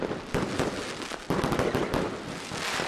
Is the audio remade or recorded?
recorded